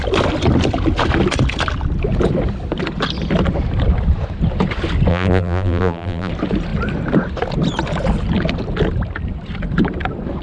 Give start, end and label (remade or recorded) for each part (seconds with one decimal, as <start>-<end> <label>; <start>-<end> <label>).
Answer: 0.0-5.1 recorded; 5.1-6.3 remade; 6.3-10.4 recorded